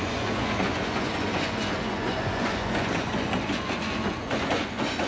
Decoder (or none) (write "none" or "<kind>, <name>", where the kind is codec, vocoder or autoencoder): vocoder, Vocos